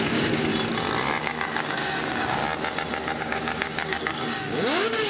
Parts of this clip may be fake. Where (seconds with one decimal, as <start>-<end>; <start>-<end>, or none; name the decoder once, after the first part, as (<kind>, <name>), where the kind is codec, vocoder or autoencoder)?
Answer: 0.0-0.5 (codec, DAC); 1.2-2.4; 3.2-5.1

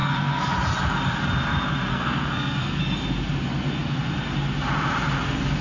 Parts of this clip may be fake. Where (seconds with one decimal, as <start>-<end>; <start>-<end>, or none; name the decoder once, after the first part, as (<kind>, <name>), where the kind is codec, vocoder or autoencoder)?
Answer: 0.0-0.5 (codec, SNAC); 1.9-2.8

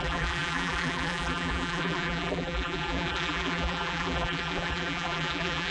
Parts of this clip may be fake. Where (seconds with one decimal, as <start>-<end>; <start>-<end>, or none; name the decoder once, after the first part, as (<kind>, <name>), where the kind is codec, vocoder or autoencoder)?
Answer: 0.0-5.7 (vocoder, BigVGAN v2)

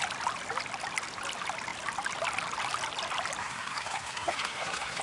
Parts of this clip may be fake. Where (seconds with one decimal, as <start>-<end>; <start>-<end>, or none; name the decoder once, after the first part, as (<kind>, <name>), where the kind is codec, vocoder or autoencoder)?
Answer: 3.4-5.0 (codec, SNAC)

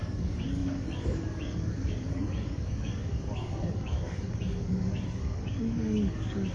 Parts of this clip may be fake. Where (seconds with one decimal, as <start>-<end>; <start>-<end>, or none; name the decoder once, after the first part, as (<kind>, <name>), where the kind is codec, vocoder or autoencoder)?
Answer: 0.0-6.5 (codec, DAC)

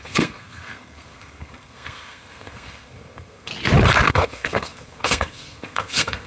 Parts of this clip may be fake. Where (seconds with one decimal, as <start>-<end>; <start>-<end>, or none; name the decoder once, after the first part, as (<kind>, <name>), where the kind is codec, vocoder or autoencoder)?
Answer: 0.0-3.5 (codec, SNAC); 4.1-6.3